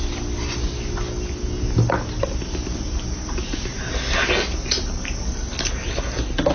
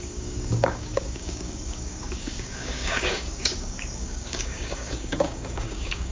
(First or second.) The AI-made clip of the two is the second